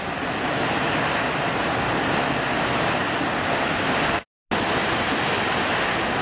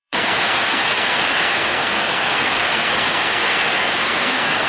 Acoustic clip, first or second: first